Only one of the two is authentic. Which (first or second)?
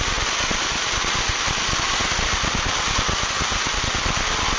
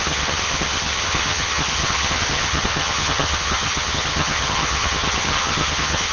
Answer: first